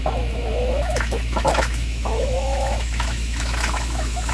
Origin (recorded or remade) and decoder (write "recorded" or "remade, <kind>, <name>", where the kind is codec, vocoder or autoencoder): remade, autoencoder, DAC-VAE